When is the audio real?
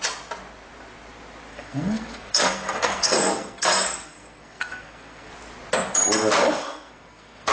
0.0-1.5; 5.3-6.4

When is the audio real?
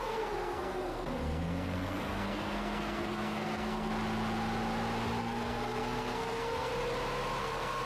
3.9-5.2; 6.7-7.4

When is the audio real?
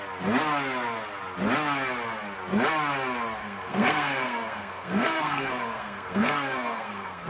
0.0-3.4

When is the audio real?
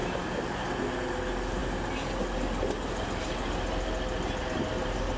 0.0-5.2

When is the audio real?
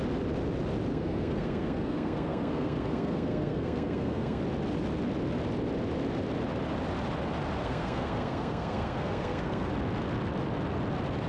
0.0-0.9; 4.4-7.6; 9.7-11.3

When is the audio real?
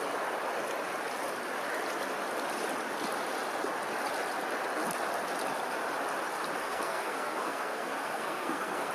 0.0-6.6